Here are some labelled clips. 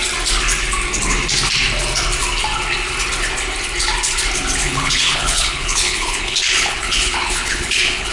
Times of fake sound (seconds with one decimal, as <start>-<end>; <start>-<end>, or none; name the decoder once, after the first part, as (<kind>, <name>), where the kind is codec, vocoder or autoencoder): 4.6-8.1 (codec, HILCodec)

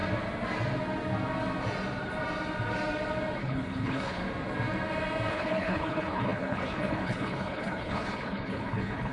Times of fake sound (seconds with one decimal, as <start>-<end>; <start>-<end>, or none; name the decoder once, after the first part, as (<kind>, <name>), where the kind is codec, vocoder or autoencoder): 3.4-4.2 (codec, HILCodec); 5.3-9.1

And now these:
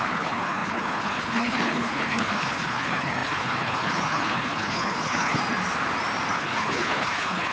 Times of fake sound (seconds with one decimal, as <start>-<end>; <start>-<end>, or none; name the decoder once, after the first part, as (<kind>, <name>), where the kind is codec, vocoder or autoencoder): 0.0-5.4 (codec, HILCodec); 6.3-7.5